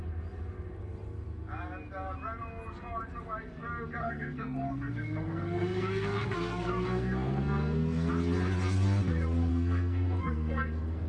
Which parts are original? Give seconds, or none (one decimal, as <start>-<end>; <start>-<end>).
0.0-4.0; 8.1-9.5